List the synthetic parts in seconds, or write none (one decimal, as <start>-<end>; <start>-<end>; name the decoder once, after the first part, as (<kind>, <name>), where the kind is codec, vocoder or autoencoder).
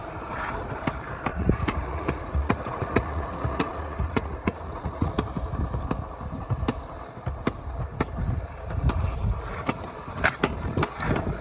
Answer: 1.3-5.1 (vocoder, Vocos)